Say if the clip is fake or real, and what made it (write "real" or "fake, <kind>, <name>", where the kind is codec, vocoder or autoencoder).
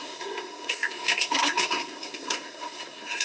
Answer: fake, codec, SNAC